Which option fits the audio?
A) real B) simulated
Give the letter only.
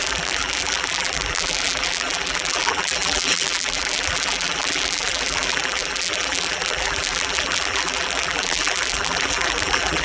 B